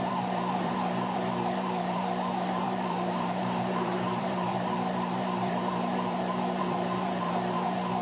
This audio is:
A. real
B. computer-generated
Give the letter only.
B